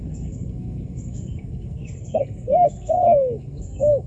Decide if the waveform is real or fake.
fake